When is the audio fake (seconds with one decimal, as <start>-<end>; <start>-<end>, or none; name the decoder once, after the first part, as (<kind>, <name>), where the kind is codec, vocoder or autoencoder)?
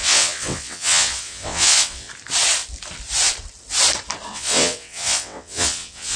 0.0-2.1 (vocoder, WaveNeXt); 4.3-6.2